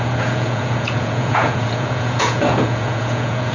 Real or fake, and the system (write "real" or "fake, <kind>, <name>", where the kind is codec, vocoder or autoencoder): fake, vocoder, Vocos